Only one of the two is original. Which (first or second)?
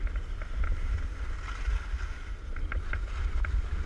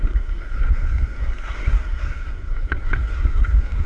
first